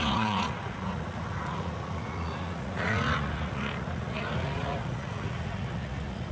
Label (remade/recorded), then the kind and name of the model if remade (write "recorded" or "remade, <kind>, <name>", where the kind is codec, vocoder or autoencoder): remade, vocoder, Vocos